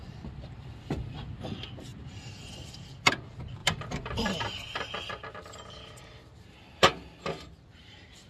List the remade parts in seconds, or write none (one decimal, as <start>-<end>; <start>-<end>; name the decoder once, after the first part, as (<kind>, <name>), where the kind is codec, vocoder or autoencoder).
0.0-6.0 (vocoder, BigVGAN v2)